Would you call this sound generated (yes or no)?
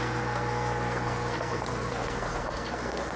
yes